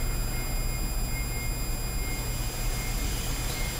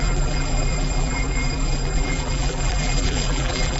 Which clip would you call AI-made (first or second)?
second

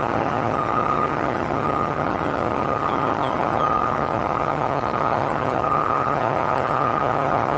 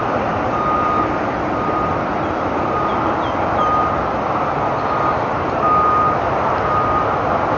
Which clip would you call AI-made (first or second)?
first